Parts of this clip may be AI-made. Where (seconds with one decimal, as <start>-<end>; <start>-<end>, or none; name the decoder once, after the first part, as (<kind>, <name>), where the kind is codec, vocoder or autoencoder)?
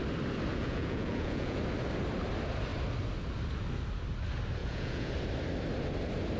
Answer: 0.5-1.6 (vocoder, Vocos); 4.6-5.1